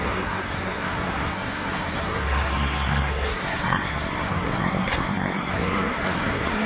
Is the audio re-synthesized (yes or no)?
yes